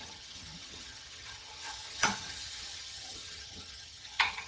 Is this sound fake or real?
fake